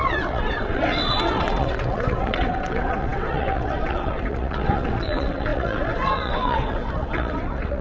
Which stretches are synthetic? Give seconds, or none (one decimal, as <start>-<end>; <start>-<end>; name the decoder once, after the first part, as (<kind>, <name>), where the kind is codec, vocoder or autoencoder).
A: 0.0-7.8 (vocoder, WaveNeXt)